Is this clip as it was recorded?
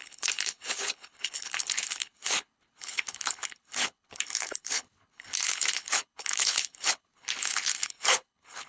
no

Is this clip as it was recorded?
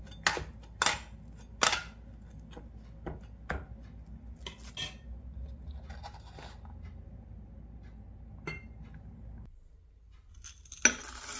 yes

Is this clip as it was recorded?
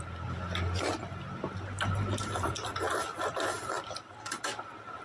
yes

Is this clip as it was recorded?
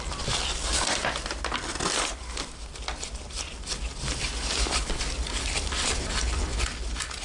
yes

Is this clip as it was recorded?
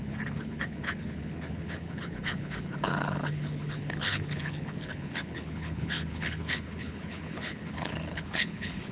no